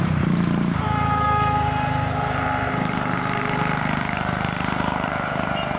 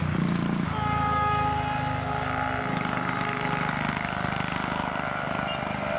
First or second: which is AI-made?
first